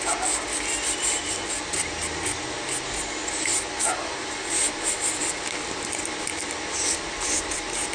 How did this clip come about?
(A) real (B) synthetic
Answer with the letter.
A